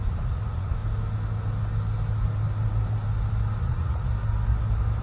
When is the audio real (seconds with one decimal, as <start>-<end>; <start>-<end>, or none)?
0.8-3.6; 4.1-5.0